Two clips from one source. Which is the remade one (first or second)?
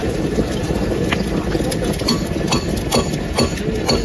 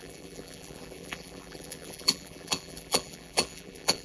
second